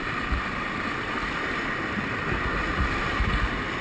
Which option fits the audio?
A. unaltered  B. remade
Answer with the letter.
A